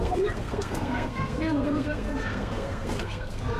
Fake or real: fake